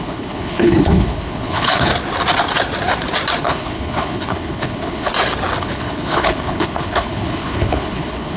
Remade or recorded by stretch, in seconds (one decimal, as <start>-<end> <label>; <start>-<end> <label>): 0.0-1.9 remade; 1.9-3.4 recorded; 3.4-5.1 remade; 5.1-5.6 recorded; 5.6-8.4 remade